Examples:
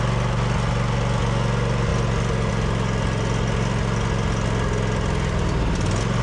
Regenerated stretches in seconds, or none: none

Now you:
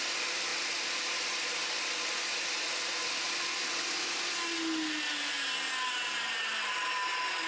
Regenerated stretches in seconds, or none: none

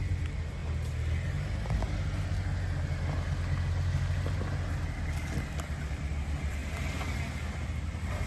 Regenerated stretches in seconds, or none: none

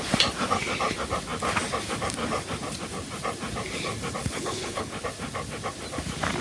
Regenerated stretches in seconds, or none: 4.2-4.9

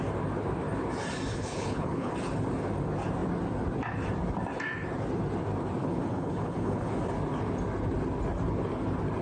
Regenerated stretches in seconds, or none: 1.3-2.1; 5.8-6.9